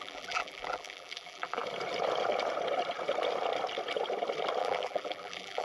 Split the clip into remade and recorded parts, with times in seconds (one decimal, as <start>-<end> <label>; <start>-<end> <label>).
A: 0.0-1.6 remade; 1.6-4.6 recorded; 4.6-5.6 remade